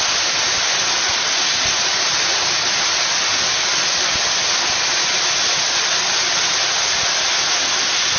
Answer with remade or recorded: recorded